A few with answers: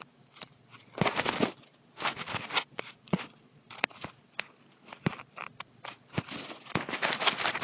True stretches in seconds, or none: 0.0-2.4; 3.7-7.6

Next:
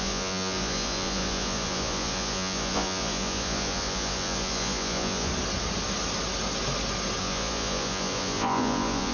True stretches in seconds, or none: 5.3-7.2

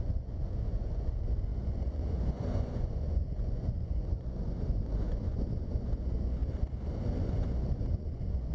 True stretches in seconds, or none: 6.4-7.2

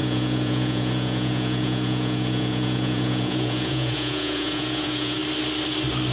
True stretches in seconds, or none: 5.2-6.1

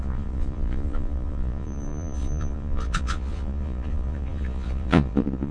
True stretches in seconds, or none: none

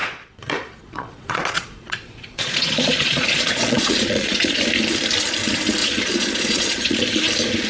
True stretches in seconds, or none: 4.6-5.8; 7.0-7.7

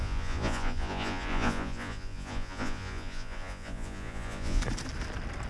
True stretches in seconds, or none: 4.6-5.5

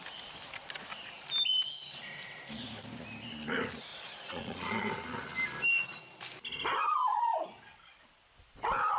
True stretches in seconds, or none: 0.0-3.9; 4.9-6.8; 7.4-9.0